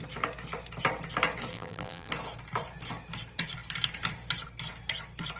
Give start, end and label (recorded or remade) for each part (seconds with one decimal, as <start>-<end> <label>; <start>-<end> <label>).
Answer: 0.0-1.5 recorded; 1.5-2.1 remade; 2.1-5.4 recorded